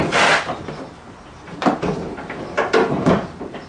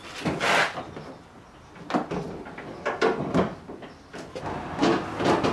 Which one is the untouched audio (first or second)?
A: second